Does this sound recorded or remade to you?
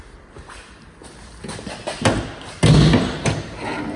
recorded